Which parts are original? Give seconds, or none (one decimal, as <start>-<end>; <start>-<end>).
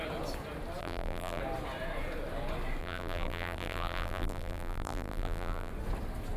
0.0-0.8; 1.4-2.8; 5.7-6.4